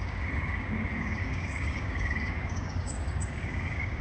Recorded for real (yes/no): no